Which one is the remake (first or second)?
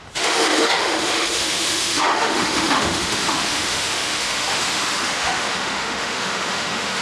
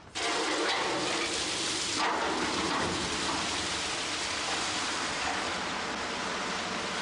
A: first